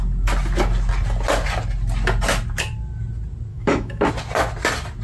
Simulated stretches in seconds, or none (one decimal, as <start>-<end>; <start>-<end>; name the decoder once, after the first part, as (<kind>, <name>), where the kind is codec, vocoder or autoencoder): 3.5-4.1 (autoencoder, DAC-VAE)